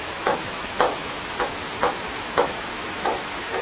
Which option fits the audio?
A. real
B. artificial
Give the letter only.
B